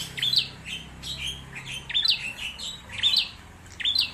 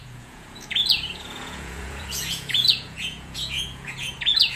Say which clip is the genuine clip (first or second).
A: first